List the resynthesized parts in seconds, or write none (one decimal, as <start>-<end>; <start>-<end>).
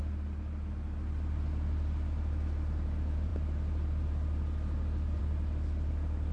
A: none